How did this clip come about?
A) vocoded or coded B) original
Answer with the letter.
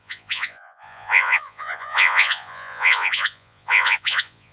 A